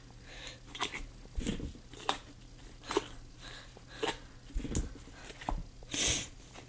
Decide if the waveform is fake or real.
real